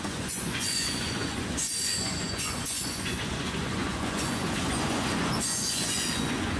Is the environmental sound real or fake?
fake